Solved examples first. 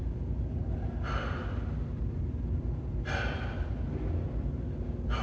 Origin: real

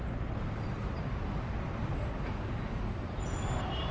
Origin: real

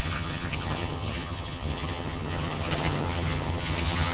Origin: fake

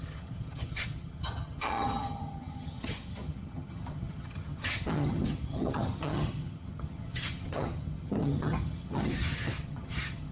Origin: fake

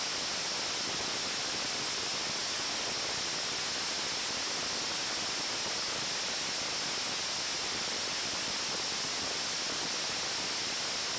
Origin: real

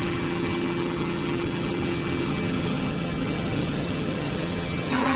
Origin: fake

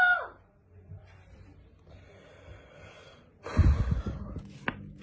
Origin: real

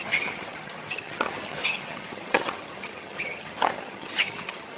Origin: fake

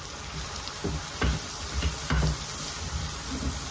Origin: real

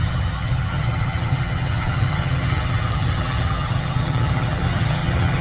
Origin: fake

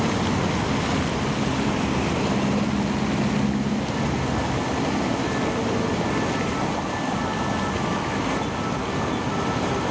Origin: real